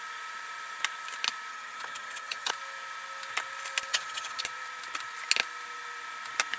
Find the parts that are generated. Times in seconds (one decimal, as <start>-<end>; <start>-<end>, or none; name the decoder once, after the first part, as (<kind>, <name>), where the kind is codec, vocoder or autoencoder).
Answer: 1.5-2.5 (vocoder, HiFi-GAN); 3.9-4.4